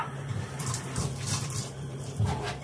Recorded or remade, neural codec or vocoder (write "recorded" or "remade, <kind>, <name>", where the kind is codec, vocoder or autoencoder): remade, vocoder, BigVGAN v2